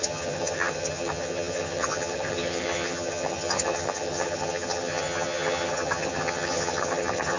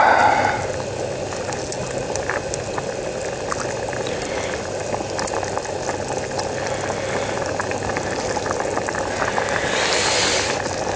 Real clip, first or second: second